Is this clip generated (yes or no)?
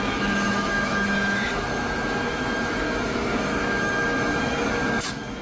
yes